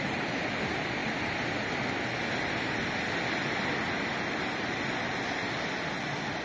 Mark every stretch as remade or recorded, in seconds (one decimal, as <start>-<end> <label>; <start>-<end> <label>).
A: 0.0-6.4 recorded